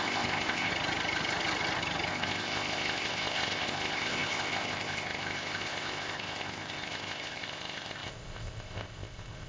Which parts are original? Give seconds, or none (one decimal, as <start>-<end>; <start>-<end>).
0.7-2.1